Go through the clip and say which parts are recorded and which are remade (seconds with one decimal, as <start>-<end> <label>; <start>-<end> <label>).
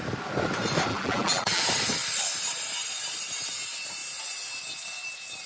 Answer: 0.0-0.9 recorded; 0.9-1.6 remade; 1.6-5.5 recorded